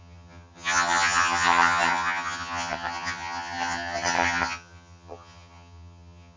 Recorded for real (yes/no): no